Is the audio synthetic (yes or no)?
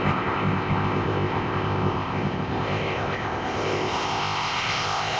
yes